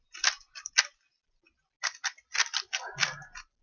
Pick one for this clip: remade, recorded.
recorded